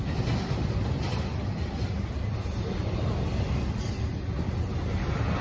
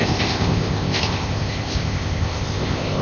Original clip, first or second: first